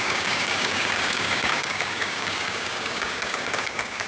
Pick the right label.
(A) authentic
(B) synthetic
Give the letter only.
B